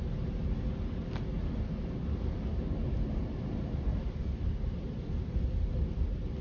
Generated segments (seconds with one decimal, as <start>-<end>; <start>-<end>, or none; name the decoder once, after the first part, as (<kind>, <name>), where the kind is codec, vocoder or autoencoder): 3.9-5.4 (vocoder, BigVGAN v2)